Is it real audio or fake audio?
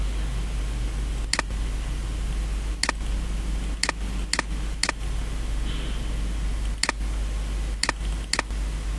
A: real